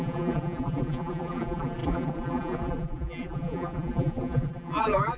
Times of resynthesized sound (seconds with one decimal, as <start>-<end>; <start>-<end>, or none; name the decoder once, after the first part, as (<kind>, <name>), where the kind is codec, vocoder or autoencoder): 0.0-5.2 (vocoder, BigVGAN v2)